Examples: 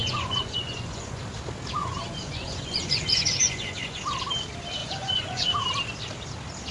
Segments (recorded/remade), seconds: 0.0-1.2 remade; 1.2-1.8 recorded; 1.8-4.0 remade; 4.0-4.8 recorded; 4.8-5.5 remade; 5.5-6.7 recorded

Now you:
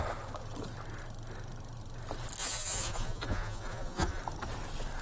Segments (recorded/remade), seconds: 0.0-2.4 recorded; 2.4-4.2 remade; 4.2-5.0 recorded

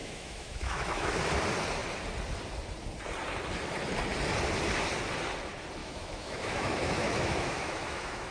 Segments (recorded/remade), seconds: 0.0-1.1 remade; 1.1-5.8 recorded; 5.8-8.3 remade

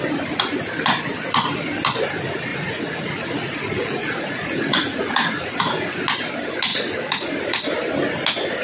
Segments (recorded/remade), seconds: 0.0-2.5 recorded; 2.5-5.6 remade; 5.6-6.7 recorded; 6.7-7.3 remade; 7.3-8.6 recorded